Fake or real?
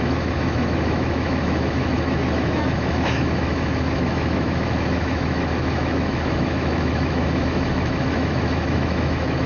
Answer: fake